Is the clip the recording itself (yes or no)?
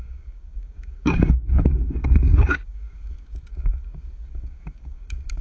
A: no